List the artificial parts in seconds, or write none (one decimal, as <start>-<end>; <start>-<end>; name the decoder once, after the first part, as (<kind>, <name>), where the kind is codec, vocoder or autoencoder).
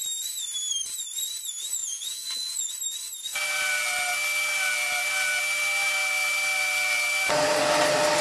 1.8-2.7 (vocoder, Vocos)